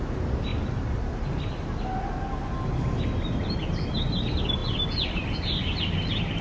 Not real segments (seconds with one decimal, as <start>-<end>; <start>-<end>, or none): 4.6-6.4